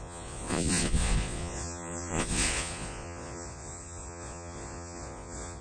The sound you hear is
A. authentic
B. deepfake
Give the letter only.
B